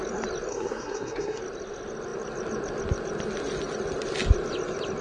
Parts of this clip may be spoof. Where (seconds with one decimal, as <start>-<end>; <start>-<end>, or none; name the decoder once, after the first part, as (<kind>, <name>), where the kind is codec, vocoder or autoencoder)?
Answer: 0.5-1.4 (codec, SNAC)